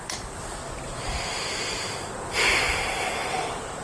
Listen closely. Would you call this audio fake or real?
real